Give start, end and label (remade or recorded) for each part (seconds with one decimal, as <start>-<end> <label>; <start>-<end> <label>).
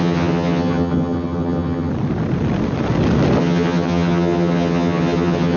0.0-1.9 remade; 1.9-3.4 recorded; 3.4-5.6 remade